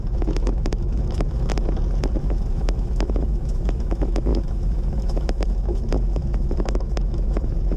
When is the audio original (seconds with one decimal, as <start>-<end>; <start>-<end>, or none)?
1.5-2.2